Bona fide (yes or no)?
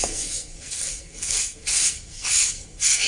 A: no